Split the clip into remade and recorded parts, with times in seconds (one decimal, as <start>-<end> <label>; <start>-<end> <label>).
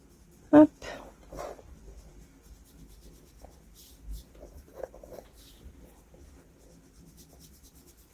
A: 0.0-8.1 recorded